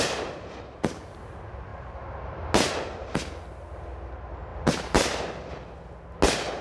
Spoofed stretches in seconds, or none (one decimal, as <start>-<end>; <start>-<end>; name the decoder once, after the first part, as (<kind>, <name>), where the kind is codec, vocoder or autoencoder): 4.5-5.5 (vocoder, BigVGAN v2)